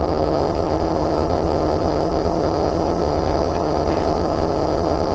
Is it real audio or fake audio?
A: fake